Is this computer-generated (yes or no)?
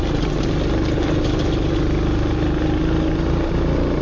no